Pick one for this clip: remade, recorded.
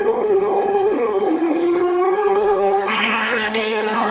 remade